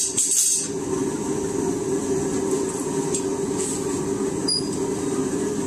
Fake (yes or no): no